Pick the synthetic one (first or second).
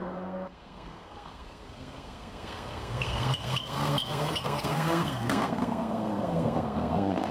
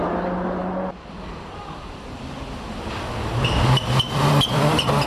first